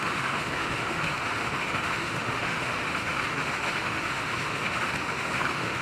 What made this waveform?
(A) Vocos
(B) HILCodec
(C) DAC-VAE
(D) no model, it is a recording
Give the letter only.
C